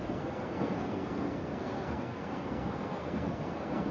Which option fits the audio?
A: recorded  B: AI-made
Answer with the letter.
B